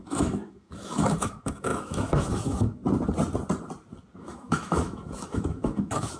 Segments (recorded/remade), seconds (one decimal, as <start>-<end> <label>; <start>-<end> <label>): 0.0-2.8 remade; 2.8-4.2 recorded; 4.2-6.2 remade